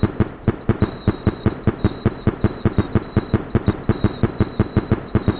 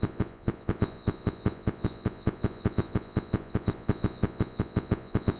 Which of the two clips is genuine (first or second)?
first